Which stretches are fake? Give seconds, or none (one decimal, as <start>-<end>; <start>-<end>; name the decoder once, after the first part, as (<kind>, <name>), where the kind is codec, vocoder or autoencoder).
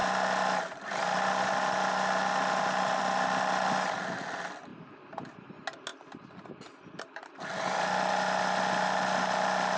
none